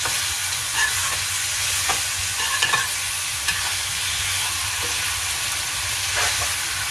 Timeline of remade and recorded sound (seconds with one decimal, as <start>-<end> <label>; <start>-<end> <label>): 0.0-0.4 recorded; 0.4-4.5 remade; 4.5-6.9 recorded